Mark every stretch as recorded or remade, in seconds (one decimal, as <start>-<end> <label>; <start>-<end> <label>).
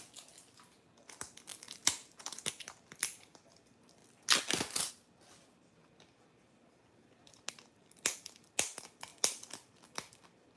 0.0-10.6 recorded